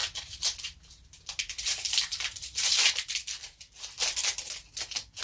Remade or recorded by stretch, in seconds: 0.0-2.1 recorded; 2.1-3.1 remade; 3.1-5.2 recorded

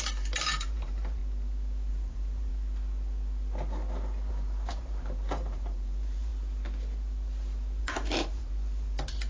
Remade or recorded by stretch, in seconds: 0.0-1.2 remade; 1.2-1.9 recorded; 1.9-2.5 remade; 2.5-4.3 recorded; 4.3-6.3 remade; 6.3-7.8 recorded; 7.8-9.3 remade

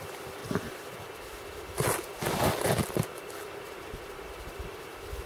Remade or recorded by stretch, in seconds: 0.0-5.3 recorded